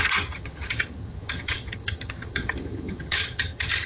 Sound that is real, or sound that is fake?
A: fake